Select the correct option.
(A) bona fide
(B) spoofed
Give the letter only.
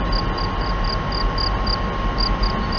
A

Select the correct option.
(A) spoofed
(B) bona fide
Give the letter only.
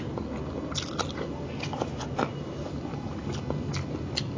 B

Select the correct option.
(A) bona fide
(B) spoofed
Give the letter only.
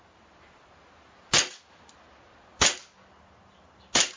A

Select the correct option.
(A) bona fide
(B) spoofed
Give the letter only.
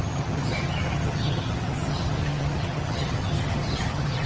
B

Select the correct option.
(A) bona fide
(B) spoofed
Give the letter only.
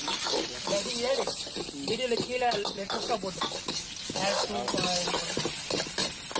A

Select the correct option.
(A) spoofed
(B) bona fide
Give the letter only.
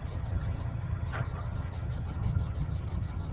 A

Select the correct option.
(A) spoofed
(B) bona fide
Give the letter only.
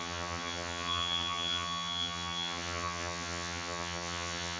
A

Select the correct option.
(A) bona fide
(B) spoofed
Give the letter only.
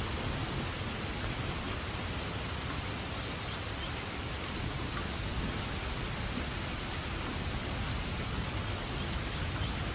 A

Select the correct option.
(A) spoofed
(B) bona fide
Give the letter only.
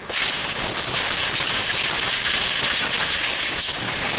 B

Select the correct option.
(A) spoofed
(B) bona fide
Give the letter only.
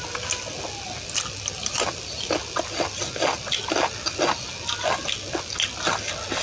B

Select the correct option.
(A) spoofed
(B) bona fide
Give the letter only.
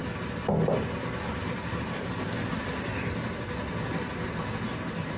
B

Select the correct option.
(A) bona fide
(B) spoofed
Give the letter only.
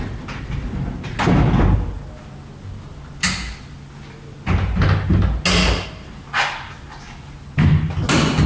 A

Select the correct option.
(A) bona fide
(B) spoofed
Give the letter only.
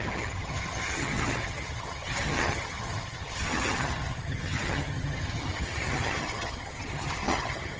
B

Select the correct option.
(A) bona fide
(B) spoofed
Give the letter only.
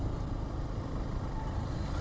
A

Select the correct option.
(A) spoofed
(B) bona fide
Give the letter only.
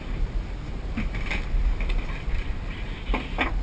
B